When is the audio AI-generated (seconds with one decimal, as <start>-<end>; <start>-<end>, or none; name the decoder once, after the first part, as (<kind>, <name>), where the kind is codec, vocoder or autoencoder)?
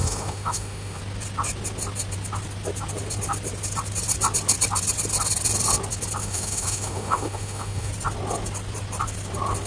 0.0-1.0 (autoencoder, DAC-VAE); 6.2-7.9